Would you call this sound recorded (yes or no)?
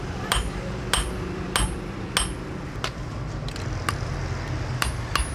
yes